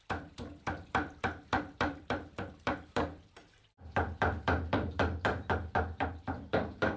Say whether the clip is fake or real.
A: fake